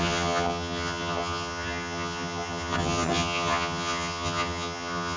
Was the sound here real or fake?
fake